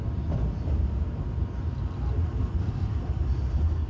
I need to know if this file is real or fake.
real